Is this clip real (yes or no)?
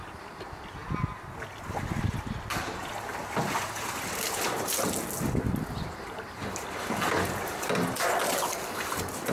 yes